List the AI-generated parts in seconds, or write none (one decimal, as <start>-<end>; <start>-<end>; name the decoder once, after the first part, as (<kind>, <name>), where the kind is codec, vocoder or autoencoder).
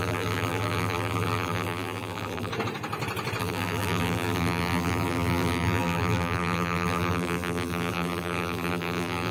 0.0-2.5 (vocoder, BigVGAN v2); 3.4-9.3